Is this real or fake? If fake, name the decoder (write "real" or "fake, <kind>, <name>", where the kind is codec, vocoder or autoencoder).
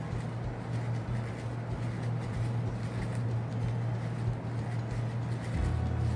real